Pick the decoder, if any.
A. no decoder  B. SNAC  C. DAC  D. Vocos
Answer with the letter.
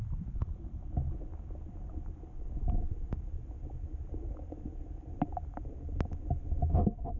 A